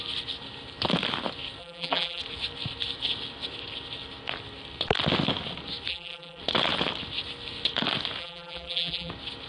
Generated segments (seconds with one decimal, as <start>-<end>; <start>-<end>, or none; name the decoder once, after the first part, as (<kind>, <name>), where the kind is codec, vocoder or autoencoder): 1.6-2.2 (vocoder, BigVGAN v2); 5.9-6.4; 8.2-9.1

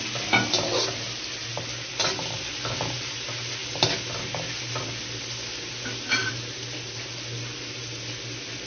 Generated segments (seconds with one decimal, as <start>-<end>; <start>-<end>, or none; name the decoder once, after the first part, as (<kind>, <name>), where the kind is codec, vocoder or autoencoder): none

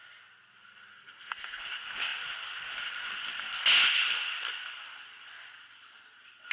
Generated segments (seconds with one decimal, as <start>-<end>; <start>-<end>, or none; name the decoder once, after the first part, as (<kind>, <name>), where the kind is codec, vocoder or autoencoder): 0.9-1.6 (codec, SNAC)